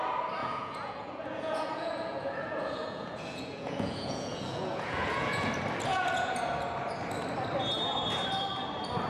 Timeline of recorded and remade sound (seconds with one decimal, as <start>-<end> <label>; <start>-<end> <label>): 0.0-0.4 recorded; 0.4-5.5 remade; 5.5-5.9 recorded; 5.9-6.4 remade; 6.4-9.1 recorded